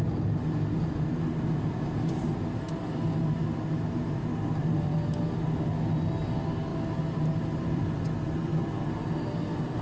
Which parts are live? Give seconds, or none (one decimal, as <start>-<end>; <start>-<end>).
0.0-9.8